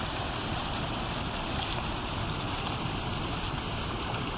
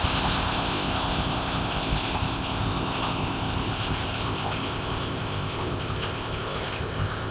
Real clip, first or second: first